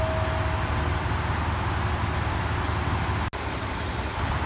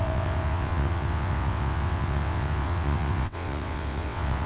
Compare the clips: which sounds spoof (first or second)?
second